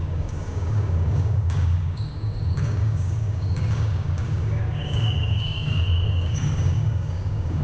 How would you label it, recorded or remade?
remade